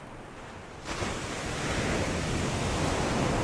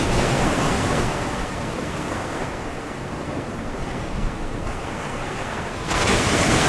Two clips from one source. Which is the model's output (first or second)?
second